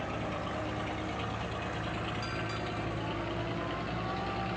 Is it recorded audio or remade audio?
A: recorded